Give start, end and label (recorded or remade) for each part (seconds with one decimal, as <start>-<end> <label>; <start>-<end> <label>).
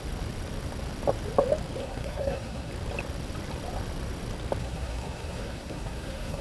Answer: 0.0-1.8 recorded; 1.8-2.7 remade; 2.7-4.6 recorded; 4.6-6.4 remade